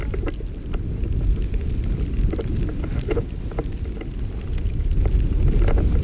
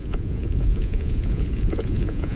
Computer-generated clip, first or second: second